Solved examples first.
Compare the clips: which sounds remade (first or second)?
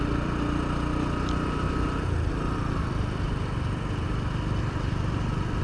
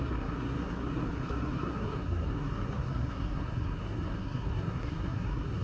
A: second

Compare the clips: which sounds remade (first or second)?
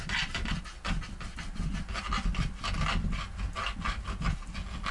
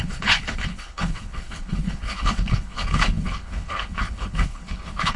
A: second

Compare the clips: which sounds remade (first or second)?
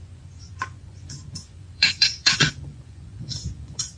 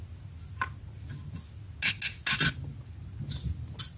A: first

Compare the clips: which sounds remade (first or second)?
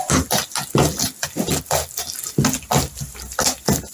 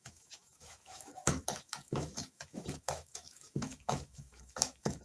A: second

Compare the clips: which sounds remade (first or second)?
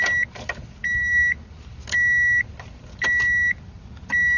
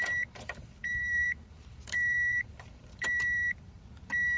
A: second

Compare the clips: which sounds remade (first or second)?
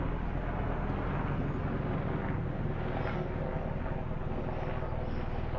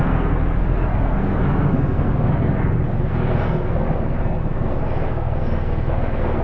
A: second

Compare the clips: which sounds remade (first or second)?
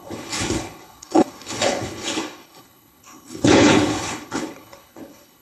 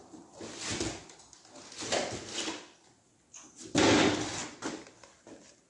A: first